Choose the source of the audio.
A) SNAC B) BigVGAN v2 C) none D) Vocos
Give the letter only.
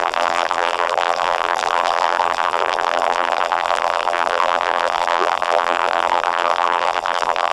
B